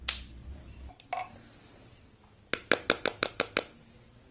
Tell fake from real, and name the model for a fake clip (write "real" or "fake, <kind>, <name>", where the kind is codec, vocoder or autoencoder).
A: real